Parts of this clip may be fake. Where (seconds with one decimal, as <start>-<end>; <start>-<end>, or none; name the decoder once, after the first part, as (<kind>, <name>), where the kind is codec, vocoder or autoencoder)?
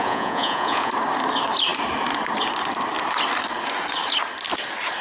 0.0-0.9 (vocoder, Vocos)